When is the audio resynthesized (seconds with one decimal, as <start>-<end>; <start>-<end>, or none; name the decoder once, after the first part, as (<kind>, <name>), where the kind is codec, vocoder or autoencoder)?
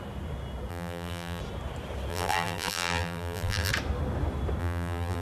0.7-1.4 (vocoder, BigVGAN v2); 2.1-3.7; 4.6-5.2